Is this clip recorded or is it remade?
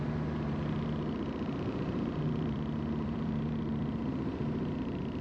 remade